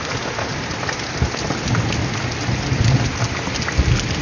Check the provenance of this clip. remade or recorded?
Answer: recorded